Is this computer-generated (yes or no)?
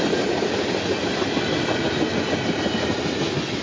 no